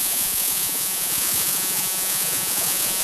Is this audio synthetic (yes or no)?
yes